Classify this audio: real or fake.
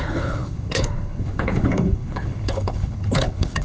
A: fake